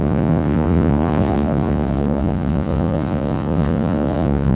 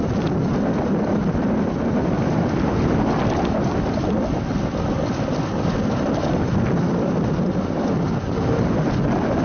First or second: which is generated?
first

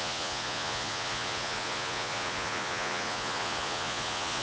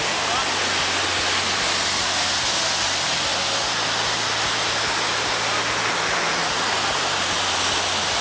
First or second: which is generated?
first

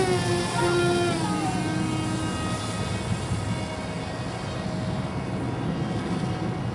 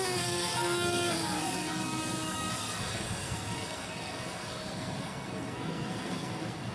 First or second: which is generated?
second